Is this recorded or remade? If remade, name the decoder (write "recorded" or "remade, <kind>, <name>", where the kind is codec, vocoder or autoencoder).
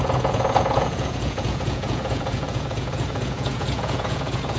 remade, vocoder, Vocos